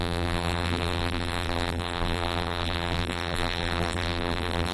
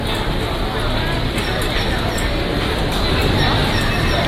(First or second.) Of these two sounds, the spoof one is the first